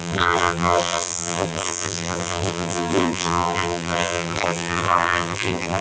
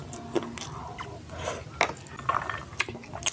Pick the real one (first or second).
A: second